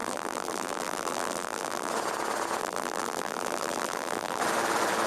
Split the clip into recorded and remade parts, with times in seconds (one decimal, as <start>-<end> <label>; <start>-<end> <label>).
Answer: 0.0-1.9 remade; 1.9-2.6 recorded; 2.6-4.4 remade; 4.4-5.1 recorded